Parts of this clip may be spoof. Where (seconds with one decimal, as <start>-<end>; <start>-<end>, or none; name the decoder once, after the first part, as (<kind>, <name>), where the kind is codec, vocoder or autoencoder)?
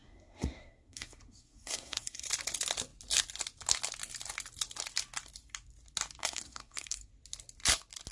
0.0-2.3 (codec, SNAC); 6.2-7.1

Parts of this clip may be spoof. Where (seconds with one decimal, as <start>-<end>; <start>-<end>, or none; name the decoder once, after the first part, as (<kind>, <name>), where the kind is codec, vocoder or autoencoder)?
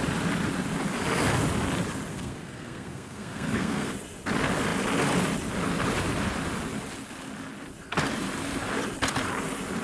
2.1-3.9 (codec, SNAC)